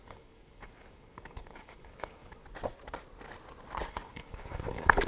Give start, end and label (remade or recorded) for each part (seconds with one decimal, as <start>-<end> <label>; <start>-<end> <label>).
0.0-2.4 remade; 2.4-3.9 recorded; 3.9-5.1 remade